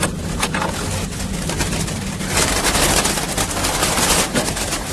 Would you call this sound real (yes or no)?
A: yes